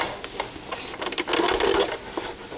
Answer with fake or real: real